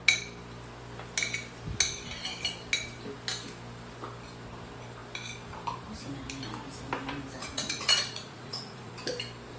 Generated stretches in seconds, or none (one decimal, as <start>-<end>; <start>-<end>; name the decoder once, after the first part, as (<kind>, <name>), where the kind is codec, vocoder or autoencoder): 7.4-8.9 (vocoder, Vocos)